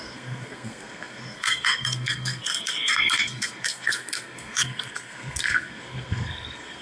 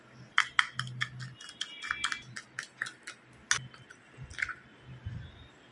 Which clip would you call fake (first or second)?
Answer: first